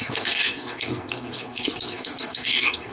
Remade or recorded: remade